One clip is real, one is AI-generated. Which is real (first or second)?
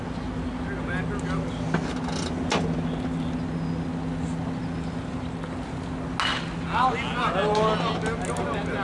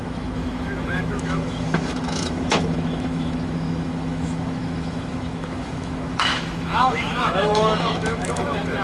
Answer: first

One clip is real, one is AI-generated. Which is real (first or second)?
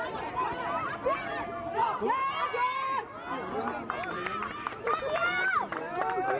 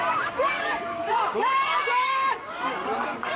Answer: first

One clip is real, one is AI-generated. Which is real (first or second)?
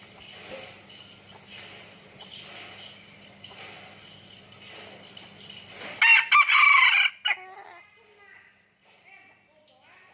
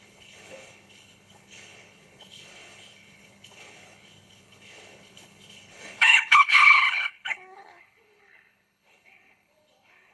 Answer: first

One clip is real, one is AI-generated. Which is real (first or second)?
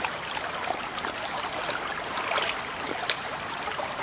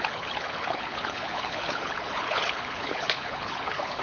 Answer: first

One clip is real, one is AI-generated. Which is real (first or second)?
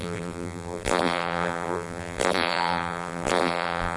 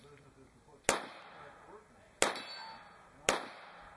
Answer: second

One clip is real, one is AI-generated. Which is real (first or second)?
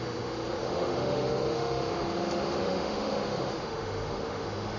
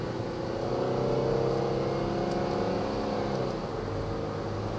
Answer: second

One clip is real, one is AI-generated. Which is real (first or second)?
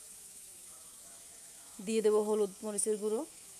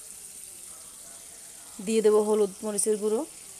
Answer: second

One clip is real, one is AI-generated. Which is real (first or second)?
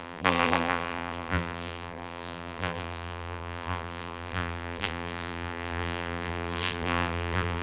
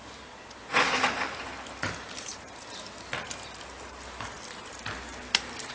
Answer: second